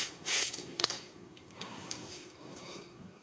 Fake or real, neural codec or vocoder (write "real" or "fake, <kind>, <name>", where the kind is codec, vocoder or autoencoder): fake, codec, SNAC